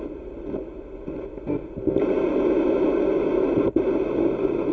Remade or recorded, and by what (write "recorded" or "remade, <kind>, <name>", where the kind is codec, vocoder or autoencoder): recorded